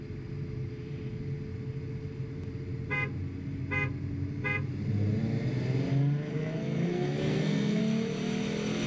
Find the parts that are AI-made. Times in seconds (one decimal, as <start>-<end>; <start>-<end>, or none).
6.3-7.8